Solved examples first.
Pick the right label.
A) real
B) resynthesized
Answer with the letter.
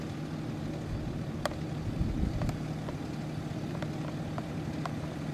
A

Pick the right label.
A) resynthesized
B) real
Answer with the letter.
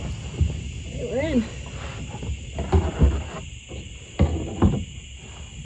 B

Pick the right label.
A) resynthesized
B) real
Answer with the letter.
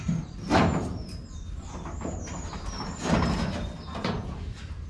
A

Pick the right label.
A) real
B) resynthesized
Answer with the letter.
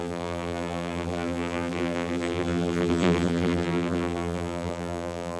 B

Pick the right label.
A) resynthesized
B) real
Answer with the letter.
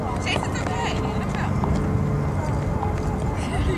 B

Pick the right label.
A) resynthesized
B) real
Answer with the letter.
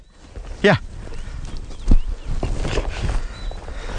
B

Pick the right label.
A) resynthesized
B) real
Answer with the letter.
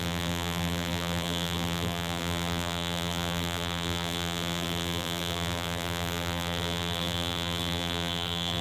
A